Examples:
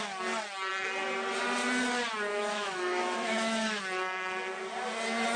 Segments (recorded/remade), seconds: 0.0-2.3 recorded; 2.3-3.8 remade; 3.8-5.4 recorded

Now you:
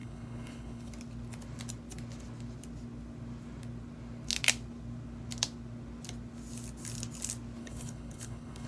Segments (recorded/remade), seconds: 0.0-0.9 remade; 0.9-7.6 recorded; 7.6-8.7 remade

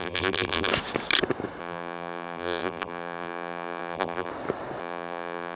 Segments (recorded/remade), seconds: 0.0-0.7 remade; 0.7-1.6 recorded; 1.6-4.3 remade; 4.3-4.8 recorded; 4.8-5.6 remade

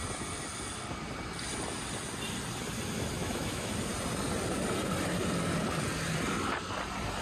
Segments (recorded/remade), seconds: 0.0-3.2 recorded; 3.2-3.7 remade; 3.7-7.2 recorded